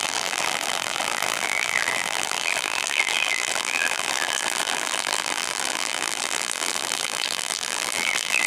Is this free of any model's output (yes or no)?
no